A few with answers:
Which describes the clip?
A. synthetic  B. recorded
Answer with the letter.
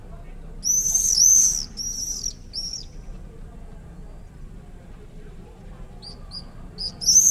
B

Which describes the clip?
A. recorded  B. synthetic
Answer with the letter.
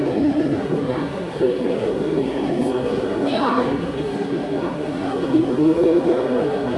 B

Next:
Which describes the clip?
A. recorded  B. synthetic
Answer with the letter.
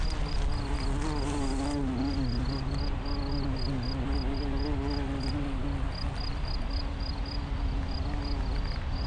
A